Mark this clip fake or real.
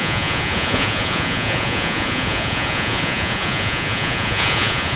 fake